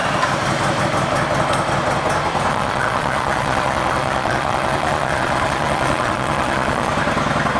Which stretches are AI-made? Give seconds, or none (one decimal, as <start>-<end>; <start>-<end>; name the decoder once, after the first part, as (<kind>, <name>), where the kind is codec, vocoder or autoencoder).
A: 2.5-6.9 (vocoder, Vocos)